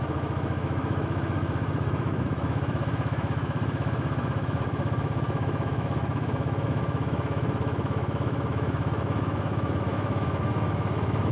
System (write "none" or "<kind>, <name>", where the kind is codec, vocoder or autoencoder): autoencoder, DAC-VAE